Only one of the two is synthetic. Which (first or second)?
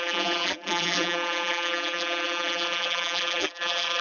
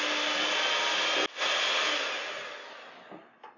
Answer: first